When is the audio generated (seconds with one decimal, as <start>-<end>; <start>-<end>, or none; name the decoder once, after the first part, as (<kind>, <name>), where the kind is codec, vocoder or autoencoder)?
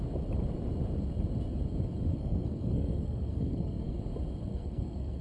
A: 2.1-4.0 (codec, SNAC); 4.5-5.2